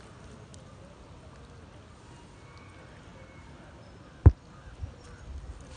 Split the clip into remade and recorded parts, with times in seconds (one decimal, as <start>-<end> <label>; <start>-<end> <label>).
0.0-5.8 recorded